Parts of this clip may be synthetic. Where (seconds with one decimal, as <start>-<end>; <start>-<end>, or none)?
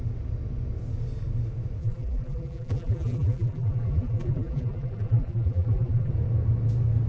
1.8-6.1